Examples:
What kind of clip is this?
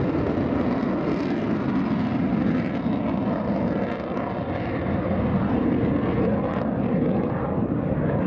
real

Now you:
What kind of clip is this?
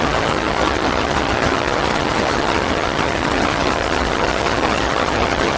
fake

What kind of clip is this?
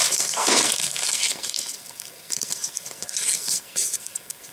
fake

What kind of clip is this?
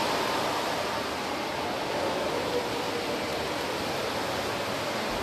real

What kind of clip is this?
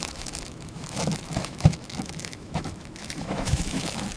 fake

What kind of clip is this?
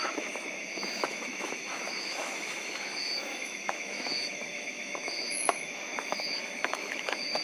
fake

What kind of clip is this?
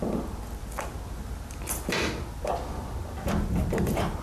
real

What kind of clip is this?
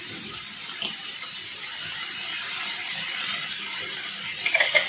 real